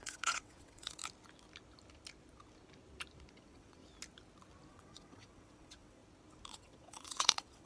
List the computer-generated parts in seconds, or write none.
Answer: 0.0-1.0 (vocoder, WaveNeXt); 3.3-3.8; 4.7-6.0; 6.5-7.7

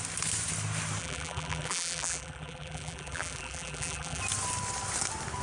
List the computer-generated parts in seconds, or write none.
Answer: 1.0-4.2 (vocoder, BigVGAN v2)

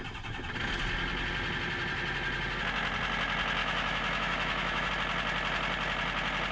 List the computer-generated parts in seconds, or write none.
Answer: 3.6-4.9 (autoencoder, DAC-VAE)

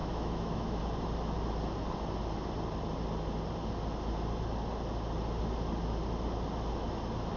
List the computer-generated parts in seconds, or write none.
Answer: 0.0-0.8 (autoencoder, DAC-VAE)

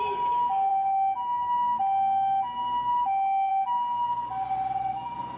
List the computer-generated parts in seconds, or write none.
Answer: none

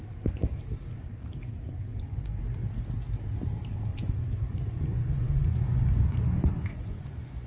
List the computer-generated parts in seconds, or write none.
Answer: 1.9-2.4 (vocoder, Vocos); 3.9-7.5

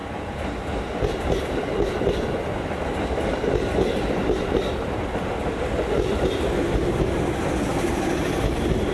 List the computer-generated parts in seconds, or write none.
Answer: none